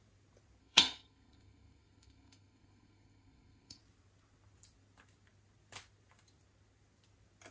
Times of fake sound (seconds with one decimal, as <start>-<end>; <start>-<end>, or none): 0.6-3.8